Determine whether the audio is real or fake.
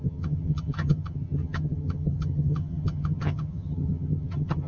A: fake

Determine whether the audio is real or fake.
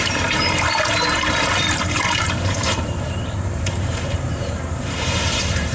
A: fake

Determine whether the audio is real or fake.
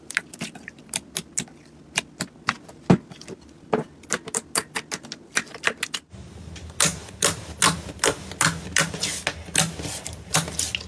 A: real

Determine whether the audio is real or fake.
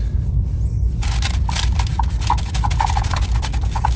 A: real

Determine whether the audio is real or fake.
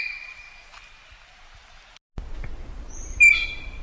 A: real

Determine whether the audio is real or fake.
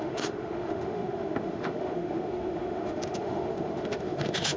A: fake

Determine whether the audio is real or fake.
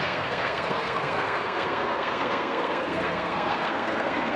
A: fake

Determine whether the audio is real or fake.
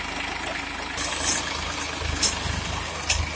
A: real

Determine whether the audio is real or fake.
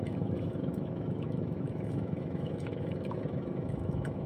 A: fake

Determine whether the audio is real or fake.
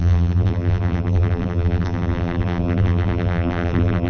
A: fake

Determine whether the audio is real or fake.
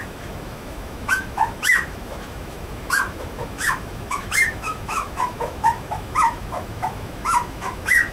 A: fake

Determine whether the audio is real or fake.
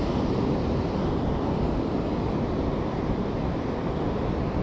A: real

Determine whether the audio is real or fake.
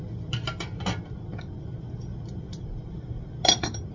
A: real